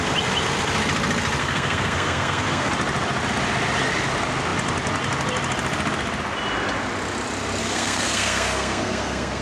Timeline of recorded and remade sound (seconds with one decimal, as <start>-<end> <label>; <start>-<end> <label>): 0.0-1.4 recorded; 1.4-2.7 remade; 2.7-7.6 recorded; 7.6-9.4 remade